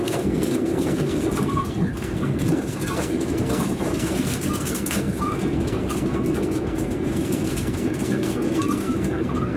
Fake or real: fake